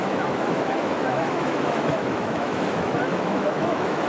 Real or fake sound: fake